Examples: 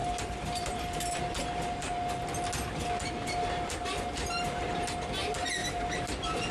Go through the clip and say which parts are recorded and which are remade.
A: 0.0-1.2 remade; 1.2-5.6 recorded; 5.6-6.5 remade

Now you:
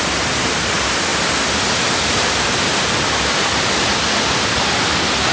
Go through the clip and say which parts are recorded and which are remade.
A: 0.0-1.1 recorded; 1.1-4.3 remade; 4.3-5.3 recorded

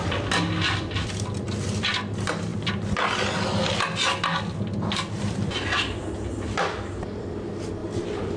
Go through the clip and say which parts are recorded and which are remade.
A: 0.0-7.8 recorded; 7.8-8.4 remade

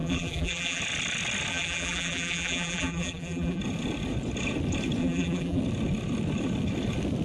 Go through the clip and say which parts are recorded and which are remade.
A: 0.0-0.8 remade; 0.8-1.5 recorded; 1.5-3.6 remade; 3.6-5.0 recorded; 5.0-5.6 remade; 5.6-7.2 recorded

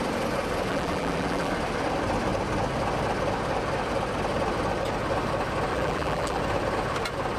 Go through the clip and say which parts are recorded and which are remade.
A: 0.0-0.7 recorded; 0.7-1.5 remade; 1.5-5.7 recorded; 5.7-6.4 remade; 6.4-7.4 recorded